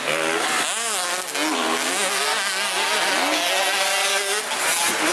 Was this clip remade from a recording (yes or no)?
no